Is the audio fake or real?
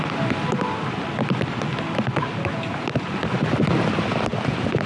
real